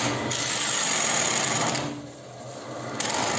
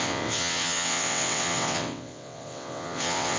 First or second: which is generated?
second